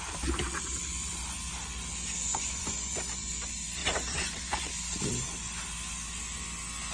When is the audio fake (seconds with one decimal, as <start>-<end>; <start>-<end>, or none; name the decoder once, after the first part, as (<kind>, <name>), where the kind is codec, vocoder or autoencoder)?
2.3-3.3 (vocoder, Vocos); 3.8-4.7